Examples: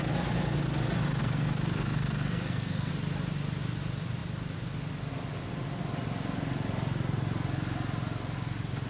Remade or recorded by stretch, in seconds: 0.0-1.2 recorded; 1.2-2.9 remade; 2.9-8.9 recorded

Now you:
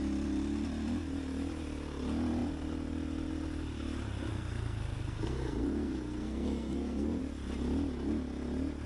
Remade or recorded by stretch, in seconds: 0.0-4.3 recorded; 4.3-7.2 remade; 7.2-8.9 recorded